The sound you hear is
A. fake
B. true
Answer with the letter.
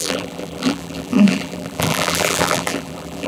A